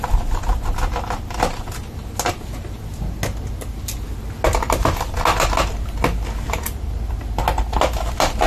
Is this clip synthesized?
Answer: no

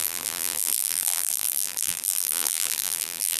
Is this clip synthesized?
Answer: yes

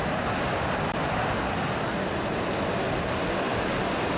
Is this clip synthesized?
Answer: no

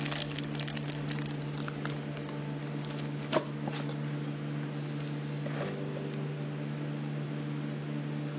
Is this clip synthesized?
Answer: no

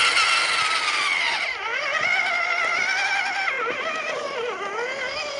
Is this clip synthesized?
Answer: no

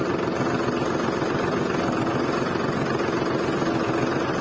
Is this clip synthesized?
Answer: no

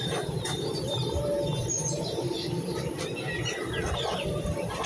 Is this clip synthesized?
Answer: yes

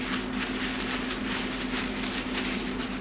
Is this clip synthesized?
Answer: no